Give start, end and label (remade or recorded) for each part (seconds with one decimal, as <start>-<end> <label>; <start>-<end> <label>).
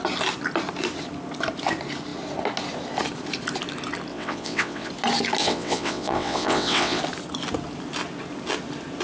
0.0-4.1 recorded; 4.1-4.9 remade; 4.9-5.4 recorded; 5.4-7.0 remade; 7.0-9.0 recorded